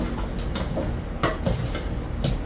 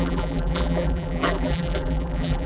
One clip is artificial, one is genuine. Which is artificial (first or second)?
second